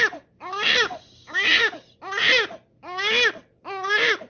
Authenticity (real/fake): real